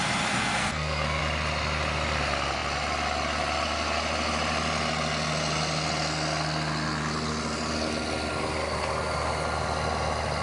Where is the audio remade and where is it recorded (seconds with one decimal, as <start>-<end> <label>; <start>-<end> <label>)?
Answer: 0.0-0.6 recorded; 0.6-1.2 remade; 1.2-10.4 recorded